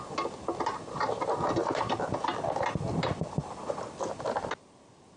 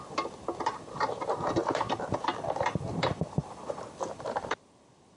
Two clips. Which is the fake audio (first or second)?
second